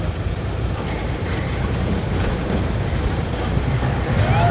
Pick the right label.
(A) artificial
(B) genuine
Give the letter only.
A